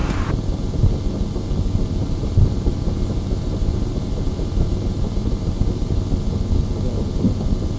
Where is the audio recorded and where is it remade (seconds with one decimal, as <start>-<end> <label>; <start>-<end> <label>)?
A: 0.0-0.9 remade; 0.9-2.0 recorded; 2.0-6.3 remade; 6.3-7.8 recorded